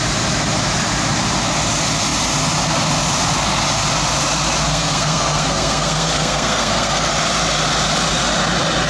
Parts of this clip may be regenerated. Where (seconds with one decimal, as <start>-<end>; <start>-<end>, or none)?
4.7-7.1